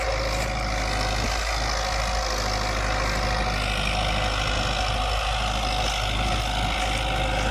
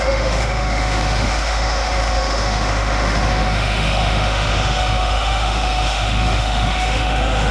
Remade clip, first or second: second